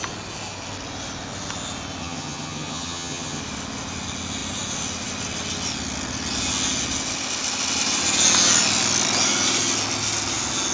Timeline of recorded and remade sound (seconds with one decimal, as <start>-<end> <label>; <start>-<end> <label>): 0.0-2.0 recorded; 2.0-3.4 remade; 3.4-10.7 recorded